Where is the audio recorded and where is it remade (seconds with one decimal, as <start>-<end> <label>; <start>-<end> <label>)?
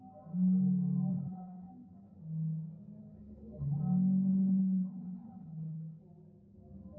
0.0-1.1 recorded; 1.1-2.2 remade; 2.2-3.0 recorded; 3.0-3.8 remade; 3.8-4.3 recorded; 4.3-6.0 remade; 6.0-7.0 recorded